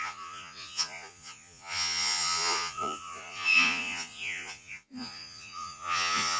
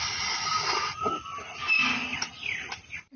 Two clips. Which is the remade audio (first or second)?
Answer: first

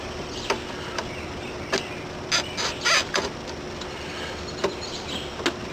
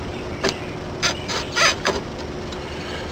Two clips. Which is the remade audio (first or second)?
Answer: second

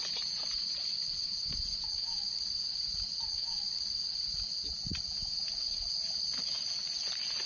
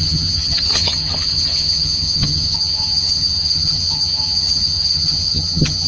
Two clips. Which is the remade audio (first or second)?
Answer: second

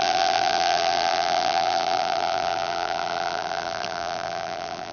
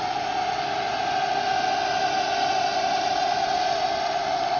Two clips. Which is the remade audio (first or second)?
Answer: first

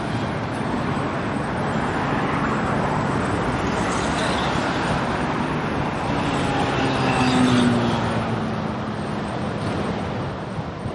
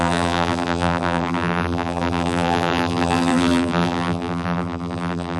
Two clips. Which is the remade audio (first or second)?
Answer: second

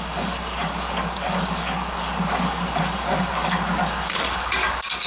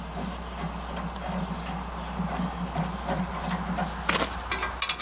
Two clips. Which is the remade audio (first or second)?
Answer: first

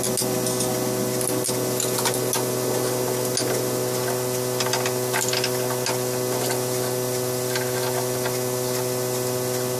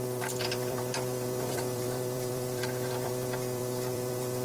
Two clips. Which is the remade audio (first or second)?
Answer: second